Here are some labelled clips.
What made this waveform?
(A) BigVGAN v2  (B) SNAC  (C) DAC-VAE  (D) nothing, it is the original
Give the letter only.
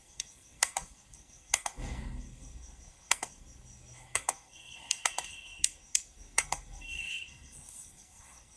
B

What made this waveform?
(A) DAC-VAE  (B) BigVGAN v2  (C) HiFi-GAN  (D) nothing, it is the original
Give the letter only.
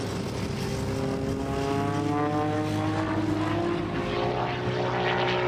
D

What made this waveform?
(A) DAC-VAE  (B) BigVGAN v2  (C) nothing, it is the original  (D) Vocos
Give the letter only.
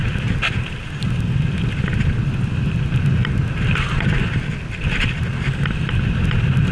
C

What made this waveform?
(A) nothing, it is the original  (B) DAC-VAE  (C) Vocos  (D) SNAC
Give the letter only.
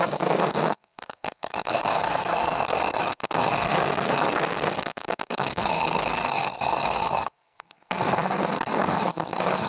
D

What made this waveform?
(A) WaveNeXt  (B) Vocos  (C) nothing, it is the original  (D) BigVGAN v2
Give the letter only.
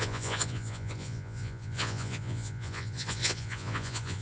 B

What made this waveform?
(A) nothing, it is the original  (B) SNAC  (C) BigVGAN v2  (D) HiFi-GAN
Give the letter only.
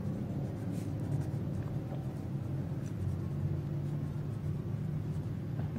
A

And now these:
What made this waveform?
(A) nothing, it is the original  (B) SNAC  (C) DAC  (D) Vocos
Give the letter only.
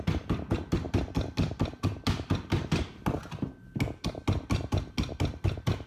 A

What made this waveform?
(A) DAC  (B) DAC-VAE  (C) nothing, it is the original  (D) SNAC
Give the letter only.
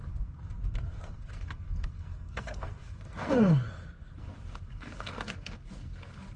D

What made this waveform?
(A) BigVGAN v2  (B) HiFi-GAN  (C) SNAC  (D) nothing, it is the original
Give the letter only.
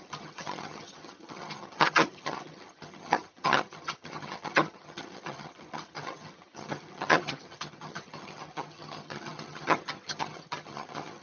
B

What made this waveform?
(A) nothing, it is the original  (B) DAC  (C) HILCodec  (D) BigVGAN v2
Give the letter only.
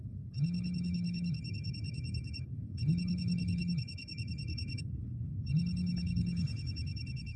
C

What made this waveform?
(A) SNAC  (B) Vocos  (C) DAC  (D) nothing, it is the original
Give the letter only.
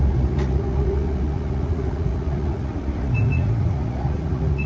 B